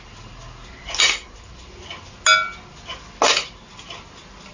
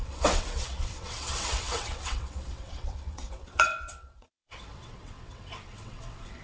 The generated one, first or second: second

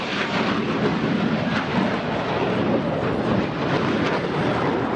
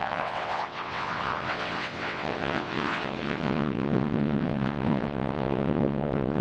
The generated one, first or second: second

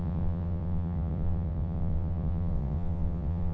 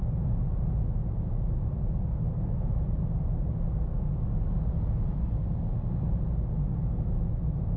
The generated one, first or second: first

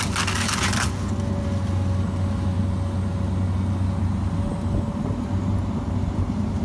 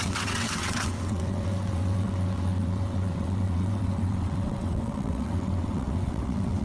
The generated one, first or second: second